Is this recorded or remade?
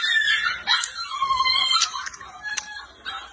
remade